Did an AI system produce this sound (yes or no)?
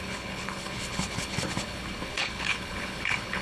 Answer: yes